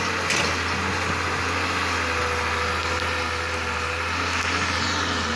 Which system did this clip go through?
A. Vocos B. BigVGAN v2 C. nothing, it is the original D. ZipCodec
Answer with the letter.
C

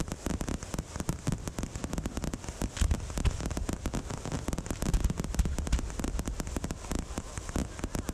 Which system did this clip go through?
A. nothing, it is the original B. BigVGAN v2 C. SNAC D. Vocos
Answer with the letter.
A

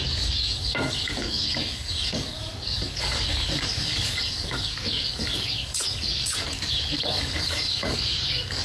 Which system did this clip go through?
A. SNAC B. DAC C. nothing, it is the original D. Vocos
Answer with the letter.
B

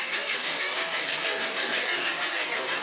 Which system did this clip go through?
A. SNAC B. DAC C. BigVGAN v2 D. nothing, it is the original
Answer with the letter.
B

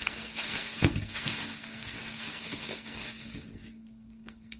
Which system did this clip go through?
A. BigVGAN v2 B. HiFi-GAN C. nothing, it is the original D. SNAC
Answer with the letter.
D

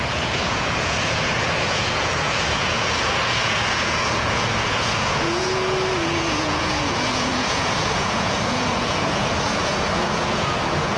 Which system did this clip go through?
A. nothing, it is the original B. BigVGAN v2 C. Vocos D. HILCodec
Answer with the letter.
C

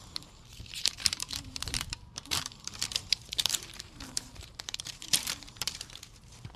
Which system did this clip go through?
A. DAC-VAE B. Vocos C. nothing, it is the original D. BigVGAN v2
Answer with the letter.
D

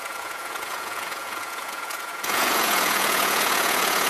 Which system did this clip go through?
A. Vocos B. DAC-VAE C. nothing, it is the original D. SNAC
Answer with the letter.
A